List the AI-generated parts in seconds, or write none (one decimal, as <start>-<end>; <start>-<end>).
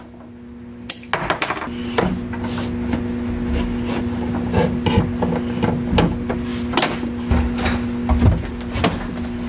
6.5-7.1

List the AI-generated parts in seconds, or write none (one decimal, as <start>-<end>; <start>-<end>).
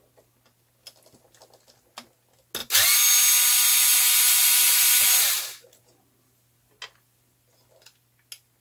none